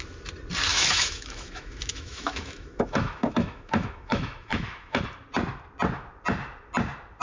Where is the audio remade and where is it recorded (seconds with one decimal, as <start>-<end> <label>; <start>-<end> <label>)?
0.0-0.7 recorded; 0.7-5.0 remade; 5.0-7.2 recorded